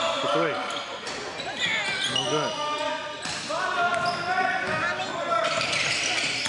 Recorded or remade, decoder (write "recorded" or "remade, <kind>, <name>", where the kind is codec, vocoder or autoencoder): recorded